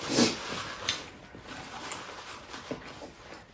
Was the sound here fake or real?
real